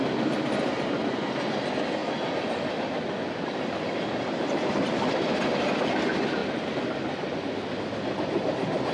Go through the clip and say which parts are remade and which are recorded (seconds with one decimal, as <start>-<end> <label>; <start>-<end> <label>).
0.0-8.9 recorded